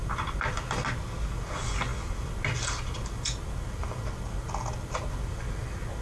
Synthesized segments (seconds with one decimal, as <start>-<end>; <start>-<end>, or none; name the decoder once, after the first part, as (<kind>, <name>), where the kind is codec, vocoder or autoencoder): none